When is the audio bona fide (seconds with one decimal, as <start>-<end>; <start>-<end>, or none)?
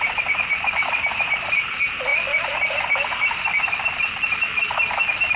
0.0-5.4